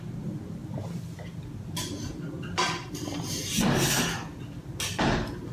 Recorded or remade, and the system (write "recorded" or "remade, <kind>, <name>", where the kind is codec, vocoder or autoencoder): recorded